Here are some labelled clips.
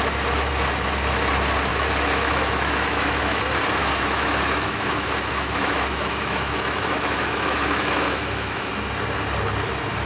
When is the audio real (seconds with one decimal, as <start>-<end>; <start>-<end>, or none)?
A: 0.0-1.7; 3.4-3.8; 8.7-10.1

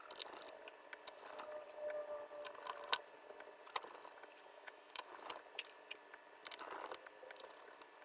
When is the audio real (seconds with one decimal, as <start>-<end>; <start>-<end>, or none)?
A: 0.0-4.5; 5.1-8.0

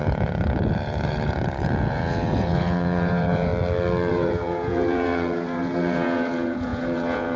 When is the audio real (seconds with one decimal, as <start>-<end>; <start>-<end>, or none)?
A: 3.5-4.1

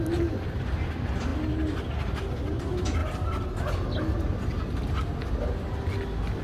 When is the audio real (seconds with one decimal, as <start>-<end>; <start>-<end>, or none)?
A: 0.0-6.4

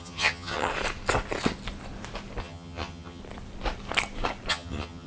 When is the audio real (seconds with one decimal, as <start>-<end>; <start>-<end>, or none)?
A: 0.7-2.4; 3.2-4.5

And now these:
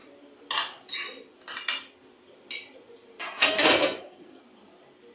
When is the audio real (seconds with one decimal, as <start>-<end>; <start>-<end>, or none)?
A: 0.0-3.4; 4.4-5.1

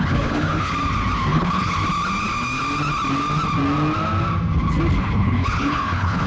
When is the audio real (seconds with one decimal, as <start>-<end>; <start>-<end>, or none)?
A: 0.7-1.3; 1.8-5.0